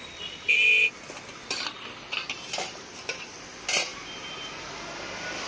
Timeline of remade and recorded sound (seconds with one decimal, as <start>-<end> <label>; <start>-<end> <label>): 0.0-5.5 recorded

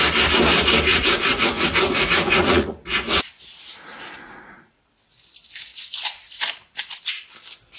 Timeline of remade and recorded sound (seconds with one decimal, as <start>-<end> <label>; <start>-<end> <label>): 0.0-0.9 recorded; 0.9-4.9 remade; 4.9-5.7 recorded; 5.7-7.0 remade; 7.0-7.8 recorded

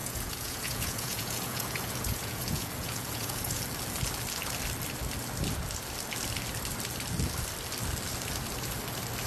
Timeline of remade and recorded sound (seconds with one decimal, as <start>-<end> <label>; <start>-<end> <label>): 0.0-3.6 remade; 3.6-9.3 recorded

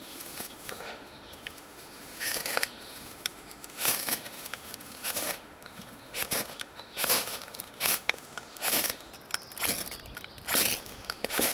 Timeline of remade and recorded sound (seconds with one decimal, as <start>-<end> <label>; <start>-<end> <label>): 0.0-9.1 remade; 9.1-10.8 recorded; 10.8-11.5 remade

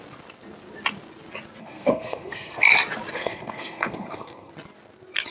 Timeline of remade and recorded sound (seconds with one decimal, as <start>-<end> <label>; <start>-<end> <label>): 0.0-1.6 recorded; 1.6-2.7 remade; 2.7-3.1 recorded; 3.1-4.5 remade; 4.5-5.3 recorded

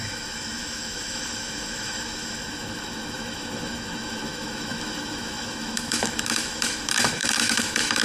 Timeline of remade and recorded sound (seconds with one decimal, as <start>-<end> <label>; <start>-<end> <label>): 0.0-8.0 remade

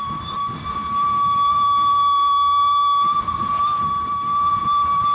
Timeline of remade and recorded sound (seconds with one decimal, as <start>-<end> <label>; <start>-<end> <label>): 0.0-1.1 recorded; 1.1-3.2 remade; 3.2-5.1 recorded